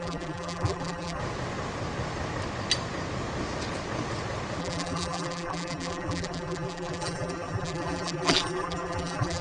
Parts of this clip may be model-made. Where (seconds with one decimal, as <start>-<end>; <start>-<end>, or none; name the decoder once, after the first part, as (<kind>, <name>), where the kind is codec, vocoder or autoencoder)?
0.0-1.2 (vocoder, BigVGAN v2); 4.6-9.4